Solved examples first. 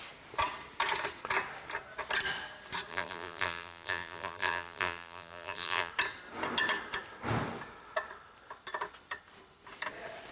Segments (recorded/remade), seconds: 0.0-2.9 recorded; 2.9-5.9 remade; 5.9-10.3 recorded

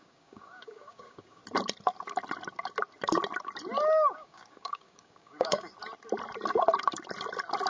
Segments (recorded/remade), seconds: 0.0-1.4 remade; 1.4-4.1 recorded; 4.1-5.7 remade; 5.7-7.7 recorded

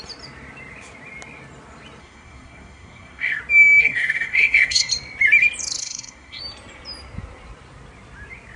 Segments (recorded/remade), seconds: 0.0-2.0 recorded; 2.0-3.4 remade; 3.4-3.8 recorded; 3.8-4.9 remade; 4.9-5.8 recorded; 5.8-6.4 remade; 6.4-8.6 recorded